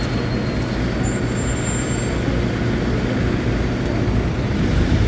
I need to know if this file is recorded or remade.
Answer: recorded